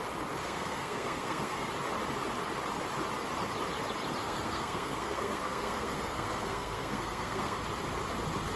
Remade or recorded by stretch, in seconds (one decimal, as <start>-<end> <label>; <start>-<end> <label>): 0.0-0.4 recorded; 0.4-1.7 remade; 1.7-4.2 recorded; 4.2-7.6 remade; 7.6-8.6 recorded